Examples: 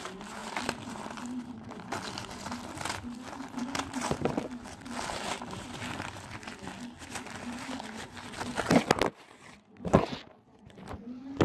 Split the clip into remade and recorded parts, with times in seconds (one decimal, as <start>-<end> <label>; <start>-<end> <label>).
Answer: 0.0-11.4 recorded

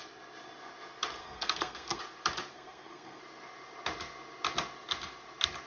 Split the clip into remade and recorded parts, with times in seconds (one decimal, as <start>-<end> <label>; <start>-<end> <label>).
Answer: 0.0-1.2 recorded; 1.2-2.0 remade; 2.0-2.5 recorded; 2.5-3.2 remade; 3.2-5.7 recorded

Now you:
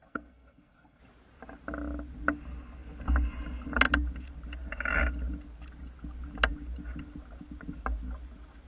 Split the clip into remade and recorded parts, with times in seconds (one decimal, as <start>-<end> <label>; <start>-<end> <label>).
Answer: 0.0-1.0 remade; 1.0-8.7 recorded

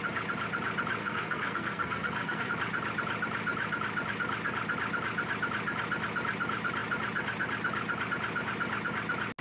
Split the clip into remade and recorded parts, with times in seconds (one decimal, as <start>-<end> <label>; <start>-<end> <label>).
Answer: 0.0-1.0 recorded; 1.0-2.5 remade; 2.5-9.4 recorded

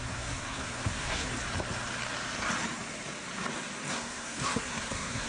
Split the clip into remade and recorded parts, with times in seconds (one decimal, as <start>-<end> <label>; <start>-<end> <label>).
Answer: 0.0-1.3 remade; 1.3-3.9 recorded; 3.9-5.3 remade

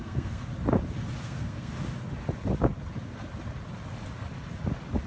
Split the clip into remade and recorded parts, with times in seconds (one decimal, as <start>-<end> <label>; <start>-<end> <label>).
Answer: 0.0-0.5 remade; 0.5-1.2 recorded; 1.2-1.7 remade; 1.7-5.1 recorded

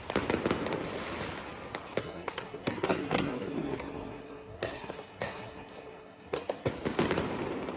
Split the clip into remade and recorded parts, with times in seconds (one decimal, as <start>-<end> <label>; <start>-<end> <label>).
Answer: 0.0-2.0 recorded; 2.0-6.7 remade; 6.7-7.8 recorded

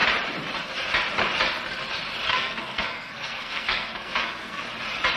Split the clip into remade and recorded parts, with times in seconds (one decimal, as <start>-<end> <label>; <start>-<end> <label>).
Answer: 0.0-2.3 recorded; 2.3-4.6 remade; 4.6-5.2 recorded